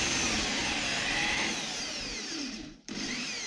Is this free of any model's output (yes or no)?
no